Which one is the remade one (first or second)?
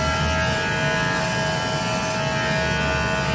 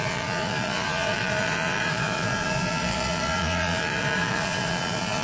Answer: second